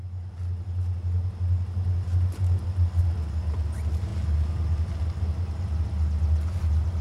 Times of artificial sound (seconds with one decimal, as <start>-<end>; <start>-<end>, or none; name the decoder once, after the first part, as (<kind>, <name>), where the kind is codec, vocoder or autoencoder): none